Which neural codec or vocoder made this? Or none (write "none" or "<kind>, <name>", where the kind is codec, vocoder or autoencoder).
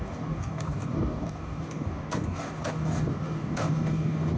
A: codec, DAC